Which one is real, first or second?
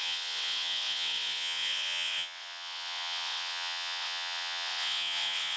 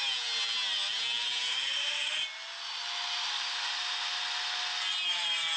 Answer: second